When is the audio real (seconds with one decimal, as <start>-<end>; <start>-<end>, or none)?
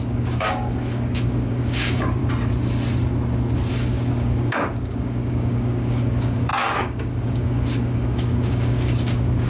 2.2-3.7